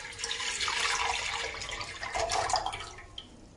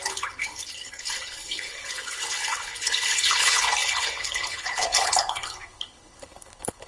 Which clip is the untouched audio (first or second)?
first